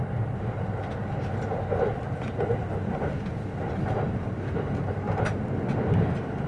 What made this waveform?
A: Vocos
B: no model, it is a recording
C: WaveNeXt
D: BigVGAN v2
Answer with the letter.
B